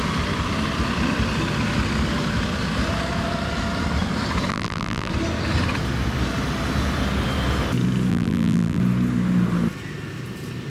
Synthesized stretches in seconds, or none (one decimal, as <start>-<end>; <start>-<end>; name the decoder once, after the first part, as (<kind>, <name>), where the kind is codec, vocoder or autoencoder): 4.5-5.1 (vocoder, BigVGAN v2); 8.1-8.8